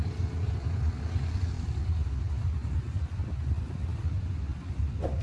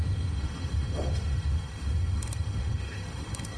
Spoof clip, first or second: second